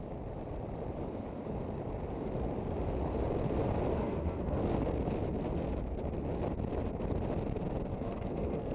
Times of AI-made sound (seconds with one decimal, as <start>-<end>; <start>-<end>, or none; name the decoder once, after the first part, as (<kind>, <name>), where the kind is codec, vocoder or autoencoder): 3.9-4.6 (codec, SNAC); 7.9-8.7